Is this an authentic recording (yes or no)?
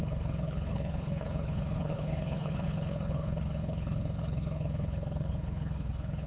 no